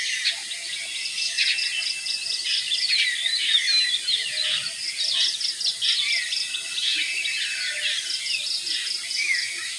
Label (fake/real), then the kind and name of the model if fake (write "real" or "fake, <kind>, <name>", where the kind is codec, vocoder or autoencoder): real